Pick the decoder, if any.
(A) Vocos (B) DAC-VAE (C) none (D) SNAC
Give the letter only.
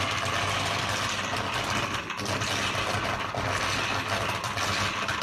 C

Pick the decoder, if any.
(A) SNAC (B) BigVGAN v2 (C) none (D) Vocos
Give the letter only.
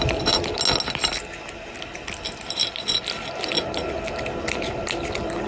C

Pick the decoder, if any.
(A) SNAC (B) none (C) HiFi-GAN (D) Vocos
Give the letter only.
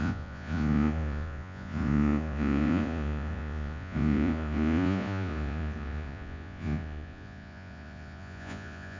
D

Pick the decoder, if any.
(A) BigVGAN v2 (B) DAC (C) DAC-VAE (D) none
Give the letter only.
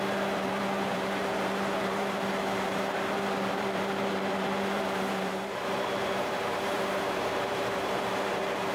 A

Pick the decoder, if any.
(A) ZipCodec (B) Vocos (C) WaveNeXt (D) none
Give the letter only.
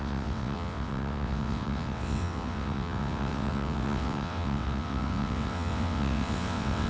C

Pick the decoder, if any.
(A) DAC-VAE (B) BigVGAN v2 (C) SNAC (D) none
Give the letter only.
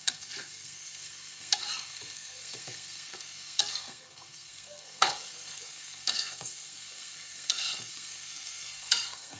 C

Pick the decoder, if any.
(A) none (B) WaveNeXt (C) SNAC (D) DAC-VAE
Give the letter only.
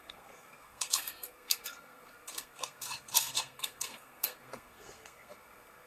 C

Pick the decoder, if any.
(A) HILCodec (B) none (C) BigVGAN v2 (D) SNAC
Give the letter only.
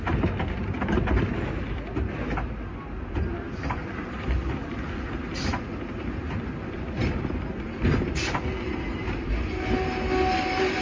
B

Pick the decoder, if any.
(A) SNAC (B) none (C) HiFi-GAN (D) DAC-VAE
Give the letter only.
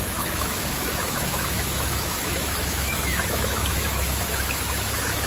D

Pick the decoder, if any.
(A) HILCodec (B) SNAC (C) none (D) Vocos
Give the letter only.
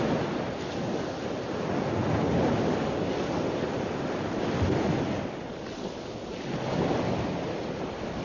C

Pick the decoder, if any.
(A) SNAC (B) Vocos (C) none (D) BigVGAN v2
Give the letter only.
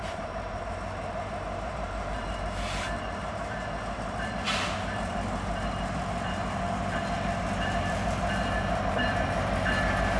D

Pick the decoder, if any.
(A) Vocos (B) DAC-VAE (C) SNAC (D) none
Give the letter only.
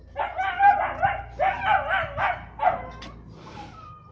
D